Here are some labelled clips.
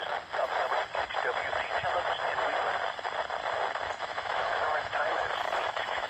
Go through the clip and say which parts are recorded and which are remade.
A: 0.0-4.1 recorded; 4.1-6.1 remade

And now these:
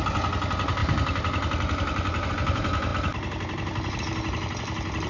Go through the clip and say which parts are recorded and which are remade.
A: 0.0-5.1 recorded

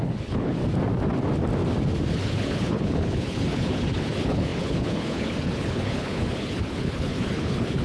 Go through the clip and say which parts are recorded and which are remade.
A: 0.0-0.6 remade; 0.6-2.1 recorded; 2.1-7.8 remade

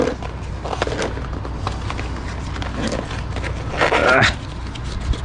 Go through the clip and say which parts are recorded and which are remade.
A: 0.0-5.2 recorded

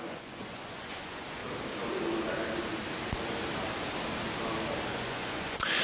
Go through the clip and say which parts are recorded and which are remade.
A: 0.0-1.4 remade; 1.4-4.9 recorded; 4.9-5.8 remade

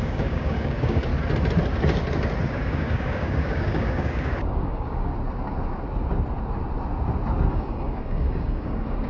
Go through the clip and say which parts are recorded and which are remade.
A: 0.0-1.1 remade; 1.1-2.5 recorded; 2.5-5.1 remade; 5.1-7.5 recorded; 7.5-9.1 remade

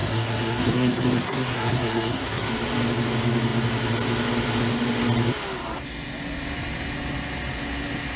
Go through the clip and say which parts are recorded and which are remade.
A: 0.0-2.5 remade; 2.5-8.2 recorded